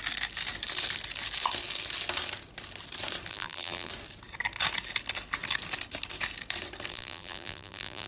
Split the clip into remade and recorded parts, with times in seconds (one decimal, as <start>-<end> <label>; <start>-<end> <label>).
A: 0.0-3.3 recorded; 3.3-3.9 remade; 3.9-6.9 recorded; 6.9-8.1 remade